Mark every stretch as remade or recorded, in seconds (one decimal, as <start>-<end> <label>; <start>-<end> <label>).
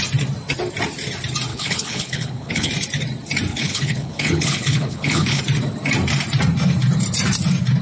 0.0-1.5 recorded; 1.5-2.7 remade; 2.7-3.5 recorded; 3.5-5.4 remade; 5.4-7.8 recorded